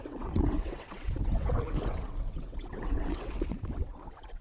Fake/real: fake